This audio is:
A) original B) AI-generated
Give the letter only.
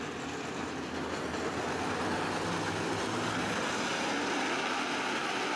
A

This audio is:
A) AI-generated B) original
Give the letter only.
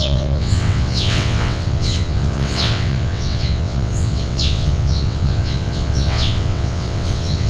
A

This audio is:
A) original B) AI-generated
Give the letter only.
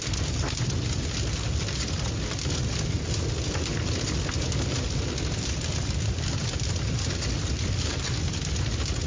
A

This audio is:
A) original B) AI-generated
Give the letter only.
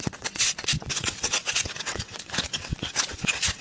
B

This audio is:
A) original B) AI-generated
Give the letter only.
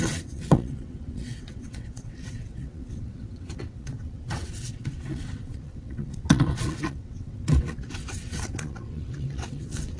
B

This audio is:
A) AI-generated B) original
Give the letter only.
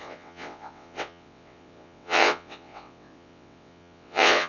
A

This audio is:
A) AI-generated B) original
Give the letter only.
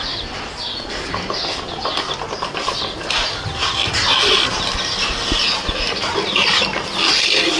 B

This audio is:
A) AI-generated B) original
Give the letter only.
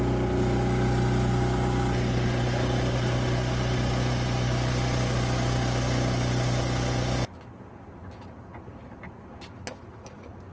B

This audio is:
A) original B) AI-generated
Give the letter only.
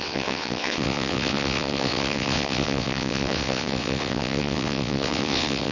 B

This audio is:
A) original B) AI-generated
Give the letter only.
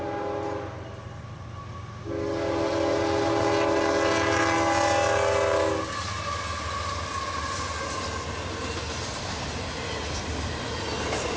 A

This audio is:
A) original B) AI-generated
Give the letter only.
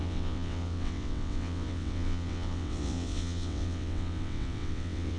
B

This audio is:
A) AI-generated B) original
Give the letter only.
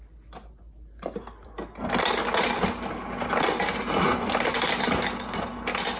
B